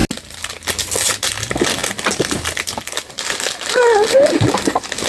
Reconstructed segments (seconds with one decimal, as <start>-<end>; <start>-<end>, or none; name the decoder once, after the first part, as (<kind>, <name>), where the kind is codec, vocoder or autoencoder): none